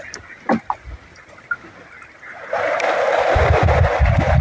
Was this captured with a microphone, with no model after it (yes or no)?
yes